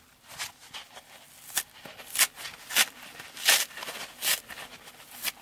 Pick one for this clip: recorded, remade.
recorded